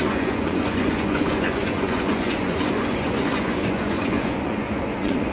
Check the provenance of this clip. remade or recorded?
remade